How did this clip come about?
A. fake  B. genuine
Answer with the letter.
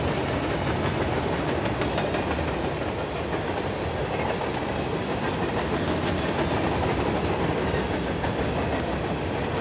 B